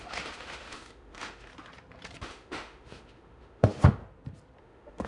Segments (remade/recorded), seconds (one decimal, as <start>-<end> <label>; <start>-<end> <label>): 0.0-1.5 remade; 1.5-2.2 recorded; 2.2-4.0 remade; 4.0-4.6 recorded; 4.6-5.1 remade